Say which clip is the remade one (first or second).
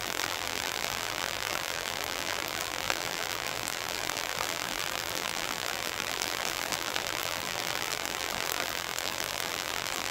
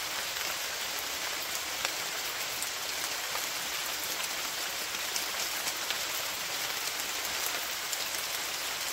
first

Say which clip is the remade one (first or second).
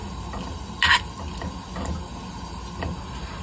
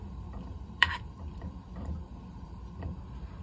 second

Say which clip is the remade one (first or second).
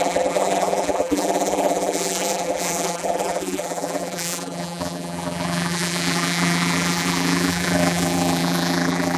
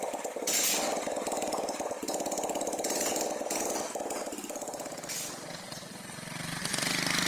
first